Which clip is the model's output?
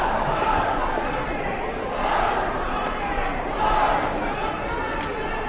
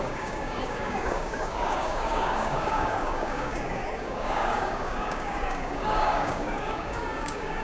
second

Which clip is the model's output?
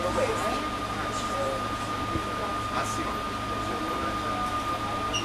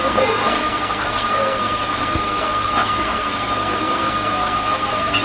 second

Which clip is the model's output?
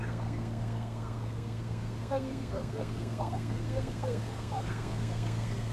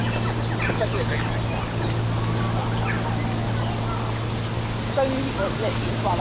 first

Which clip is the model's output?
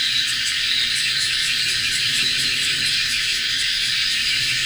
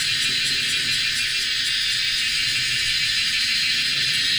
first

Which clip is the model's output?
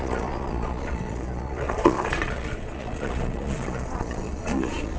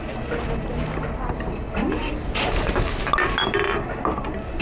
first